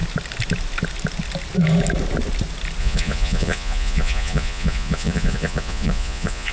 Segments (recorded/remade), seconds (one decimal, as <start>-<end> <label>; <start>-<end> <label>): 0.0-2.8 recorded; 2.8-6.5 remade